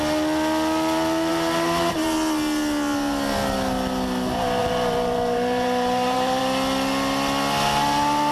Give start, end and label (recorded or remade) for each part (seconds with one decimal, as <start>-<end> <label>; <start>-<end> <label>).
0.0-1.3 recorded; 1.3-1.9 remade; 1.9-4.6 recorded; 4.6-6.4 remade; 6.4-8.3 recorded